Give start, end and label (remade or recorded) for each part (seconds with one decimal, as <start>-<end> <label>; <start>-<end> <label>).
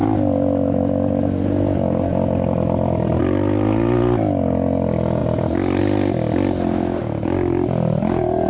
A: 0.0-5.2 recorded; 5.2-5.8 remade; 5.8-8.5 recorded